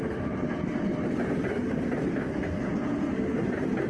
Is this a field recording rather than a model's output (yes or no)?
yes